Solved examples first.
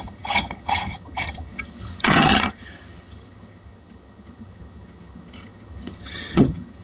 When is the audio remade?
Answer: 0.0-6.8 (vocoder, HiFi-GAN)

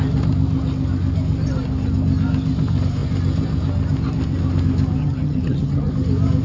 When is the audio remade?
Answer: 5.0-5.9 (vocoder, HiFi-GAN)

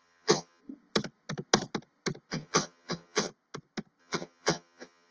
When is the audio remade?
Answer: 0.0-0.6 (vocoder, HiFi-GAN); 2.3-3.3; 4.0-5.1